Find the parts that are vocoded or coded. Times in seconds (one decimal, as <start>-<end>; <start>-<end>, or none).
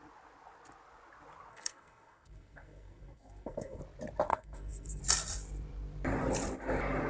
1.5-3.8; 4.3-5.0